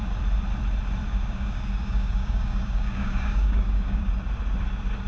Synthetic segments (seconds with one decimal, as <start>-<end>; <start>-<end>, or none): 1.1-4.1